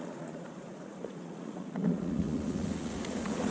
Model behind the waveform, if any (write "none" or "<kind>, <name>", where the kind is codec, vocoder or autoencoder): vocoder, Vocos